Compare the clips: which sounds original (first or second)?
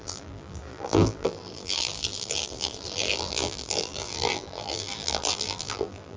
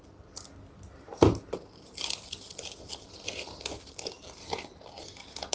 second